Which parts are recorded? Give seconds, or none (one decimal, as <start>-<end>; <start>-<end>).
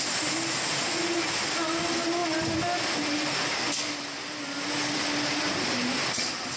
0.0-6.6